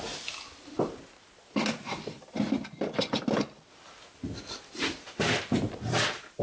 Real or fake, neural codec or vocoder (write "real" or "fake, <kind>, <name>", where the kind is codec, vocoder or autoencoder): real